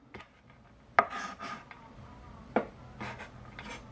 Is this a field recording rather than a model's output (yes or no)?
yes